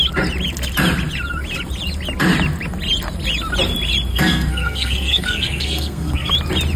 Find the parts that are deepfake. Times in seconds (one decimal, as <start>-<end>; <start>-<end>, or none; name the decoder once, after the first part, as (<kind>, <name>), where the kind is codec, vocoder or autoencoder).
4.1-6.3 (codec, SNAC)